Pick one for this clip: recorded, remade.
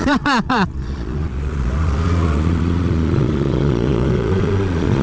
remade